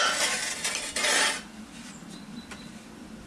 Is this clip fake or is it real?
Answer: real